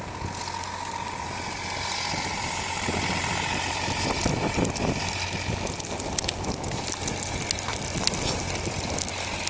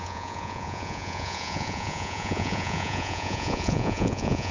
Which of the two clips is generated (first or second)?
second